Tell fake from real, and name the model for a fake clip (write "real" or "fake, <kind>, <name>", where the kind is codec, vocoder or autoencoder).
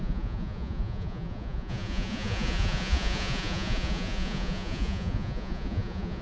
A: fake, vocoder, Vocos